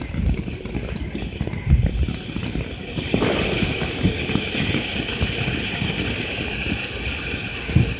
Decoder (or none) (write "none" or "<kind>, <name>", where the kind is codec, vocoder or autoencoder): none